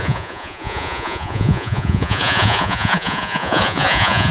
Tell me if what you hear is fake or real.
fake